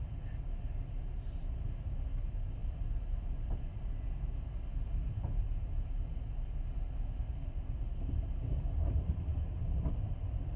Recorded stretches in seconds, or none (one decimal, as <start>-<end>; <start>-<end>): 0.0-10.6